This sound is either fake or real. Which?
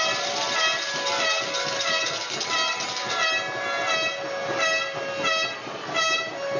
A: real